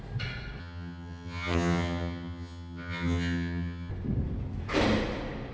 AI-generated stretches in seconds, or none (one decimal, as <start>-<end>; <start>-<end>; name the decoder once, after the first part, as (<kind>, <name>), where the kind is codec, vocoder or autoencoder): 0.6-3.9 (vocoder, HiFi-GAN)